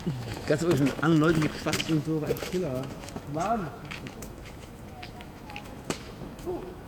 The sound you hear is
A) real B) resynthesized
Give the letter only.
B